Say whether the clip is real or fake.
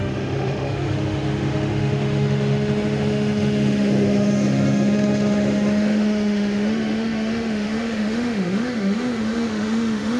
fake